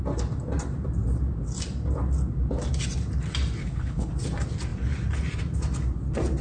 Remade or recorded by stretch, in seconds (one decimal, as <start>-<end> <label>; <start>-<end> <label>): 0.0-3.6 recorded; 3.6-4.1 remade; 4.1-6.4 recorded